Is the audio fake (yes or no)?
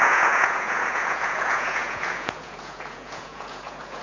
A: yes